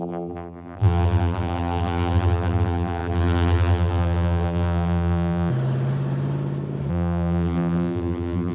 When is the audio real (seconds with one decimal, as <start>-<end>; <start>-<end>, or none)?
5.5-6.9